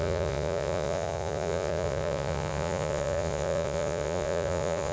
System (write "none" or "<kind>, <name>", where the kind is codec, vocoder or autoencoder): vocoder, Vocos